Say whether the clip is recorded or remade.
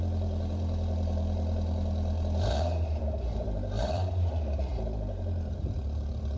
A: remade